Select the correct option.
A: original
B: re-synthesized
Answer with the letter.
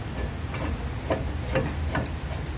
A